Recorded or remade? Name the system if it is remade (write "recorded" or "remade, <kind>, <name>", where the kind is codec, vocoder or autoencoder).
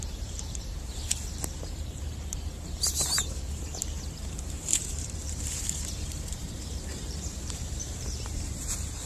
remade, vocoder, BigVGAN v2